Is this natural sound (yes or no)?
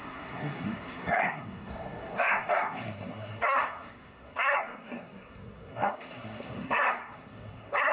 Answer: no